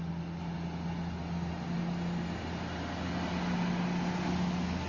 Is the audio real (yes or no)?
yes